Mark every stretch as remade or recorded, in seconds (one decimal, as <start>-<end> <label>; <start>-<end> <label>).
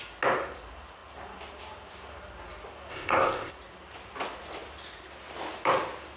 0.0-2.9 recorded; 2.9-3.5 remade; 3.5-6.2 recorded